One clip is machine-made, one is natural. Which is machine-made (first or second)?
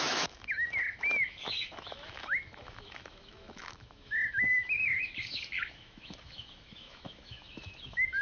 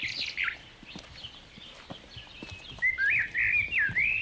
first